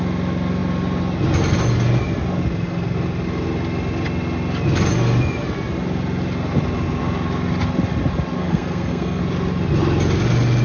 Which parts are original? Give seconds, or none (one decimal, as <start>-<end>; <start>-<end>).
0.0-8.4; 9.2-10.6